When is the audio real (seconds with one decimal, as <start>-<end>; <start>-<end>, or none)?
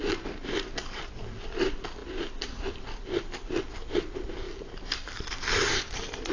none